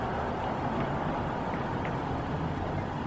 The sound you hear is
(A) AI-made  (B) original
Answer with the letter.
A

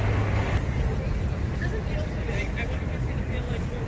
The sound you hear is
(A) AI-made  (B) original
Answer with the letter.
B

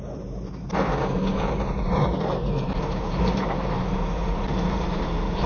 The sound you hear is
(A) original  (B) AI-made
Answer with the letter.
B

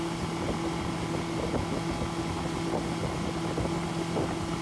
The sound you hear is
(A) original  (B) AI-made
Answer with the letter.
A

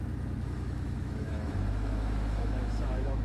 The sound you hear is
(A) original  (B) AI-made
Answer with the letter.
B